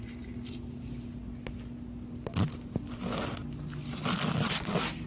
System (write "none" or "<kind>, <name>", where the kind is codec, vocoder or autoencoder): none